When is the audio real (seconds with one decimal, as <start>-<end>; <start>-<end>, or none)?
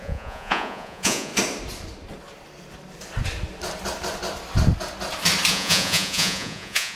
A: 1.3-5.5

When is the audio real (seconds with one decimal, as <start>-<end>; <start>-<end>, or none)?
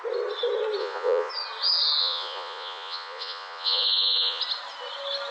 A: 0.0-0.8; 1.3-2.0; 4.4-5.3